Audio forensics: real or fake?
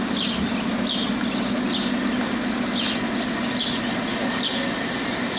real